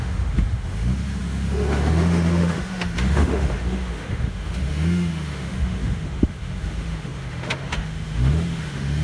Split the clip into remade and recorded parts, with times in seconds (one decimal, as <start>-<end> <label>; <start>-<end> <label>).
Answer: 0.0-9.0 remade